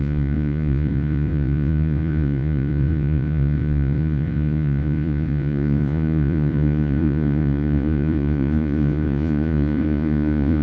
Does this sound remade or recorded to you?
remade